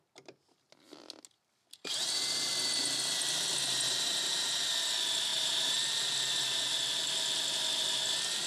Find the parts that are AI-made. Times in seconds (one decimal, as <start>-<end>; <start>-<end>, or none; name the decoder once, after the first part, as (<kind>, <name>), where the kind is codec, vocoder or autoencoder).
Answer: 2.8-4.7 (vocoder, BigVGAN v2); 5.3-6.7